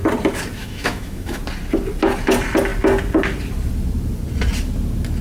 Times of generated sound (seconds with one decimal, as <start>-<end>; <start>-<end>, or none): 0.6-1.4